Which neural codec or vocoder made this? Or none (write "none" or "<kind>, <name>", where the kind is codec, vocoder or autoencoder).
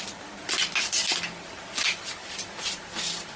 none